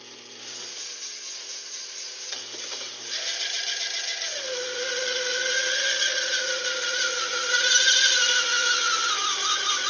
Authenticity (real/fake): real